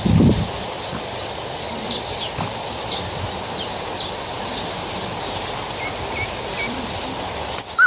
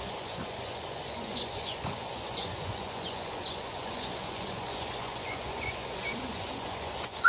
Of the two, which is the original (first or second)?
first